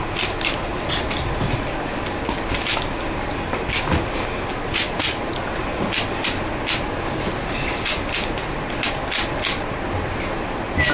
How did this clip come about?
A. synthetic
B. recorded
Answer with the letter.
B